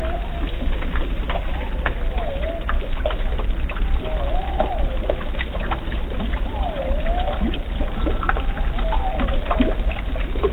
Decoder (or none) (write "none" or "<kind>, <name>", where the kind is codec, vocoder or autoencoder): none